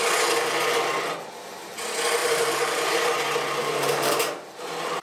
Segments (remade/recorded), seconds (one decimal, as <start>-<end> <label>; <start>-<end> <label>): 0.0-2.2 recorded; 2.2-3.1 remade; 3.1-3.6 recorded; 3.6-5.0 remade